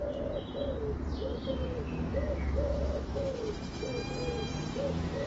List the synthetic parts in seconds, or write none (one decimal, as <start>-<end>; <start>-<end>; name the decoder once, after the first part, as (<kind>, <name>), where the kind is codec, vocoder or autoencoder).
1.3-3.5 (autoencoder, DAC-VAE)